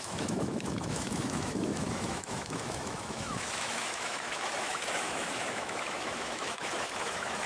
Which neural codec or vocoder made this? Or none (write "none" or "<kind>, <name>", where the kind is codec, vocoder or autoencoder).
autoencoder, DAC-VAE